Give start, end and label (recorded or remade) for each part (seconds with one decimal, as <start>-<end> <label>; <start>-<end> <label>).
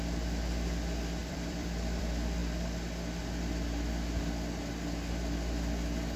0.0-1.2 recorded; 1.2-2.0 remade; 2.0-6.2 recorded